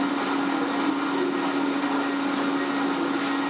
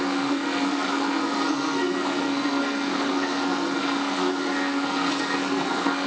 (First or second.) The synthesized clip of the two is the second